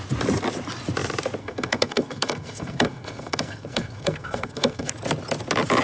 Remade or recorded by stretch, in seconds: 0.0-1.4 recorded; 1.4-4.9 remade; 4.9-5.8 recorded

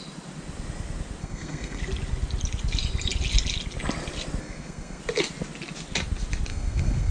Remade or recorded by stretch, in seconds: 0.0-1.2 recorded; 1.2-1.8 remade; 1.8-4.4 recorded; 4.4-5.0 remade; 5.0-6.5 recorded; 6.5-7.1 remade

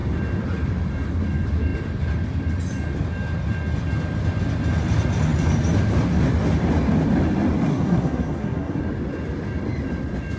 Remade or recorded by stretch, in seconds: 0.0-7.7 recorded; 7.7-8.8 remade; 8.8-10.4 recorded

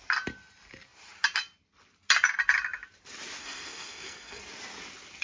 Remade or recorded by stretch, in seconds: 0.0-3.4 recorded; 3.4-4.4 remade; 4.4-5.2 recorded